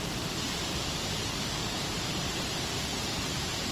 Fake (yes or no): yes